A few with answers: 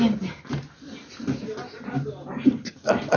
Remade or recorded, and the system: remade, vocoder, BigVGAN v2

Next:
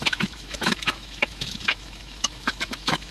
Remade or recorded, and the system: remade, autoencoder, DAC-VAE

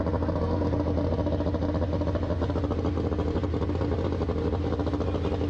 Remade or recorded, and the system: recorded